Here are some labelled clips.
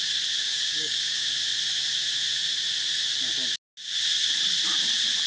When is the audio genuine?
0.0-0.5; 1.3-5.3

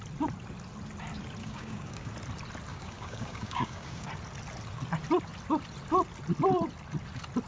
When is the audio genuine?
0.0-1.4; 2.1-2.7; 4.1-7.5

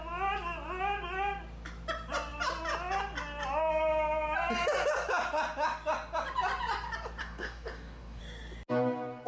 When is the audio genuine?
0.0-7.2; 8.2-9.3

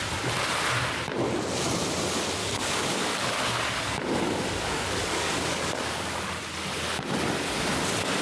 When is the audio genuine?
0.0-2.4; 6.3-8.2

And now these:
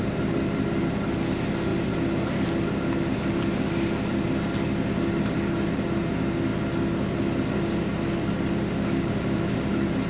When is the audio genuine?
0.0-10.1

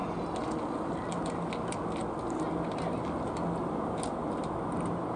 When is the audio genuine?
0.0-5.2